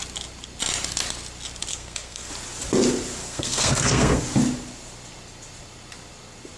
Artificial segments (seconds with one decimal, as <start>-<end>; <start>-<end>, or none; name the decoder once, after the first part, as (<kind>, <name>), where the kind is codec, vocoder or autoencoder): 1.7-2.3 (codec, SNAC); 3.2-4.2